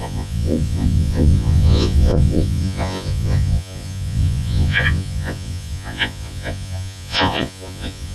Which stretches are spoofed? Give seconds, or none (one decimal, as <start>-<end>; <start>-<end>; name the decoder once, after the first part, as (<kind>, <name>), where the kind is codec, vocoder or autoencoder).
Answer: 0.0-8.1 (vocoder, Vocos)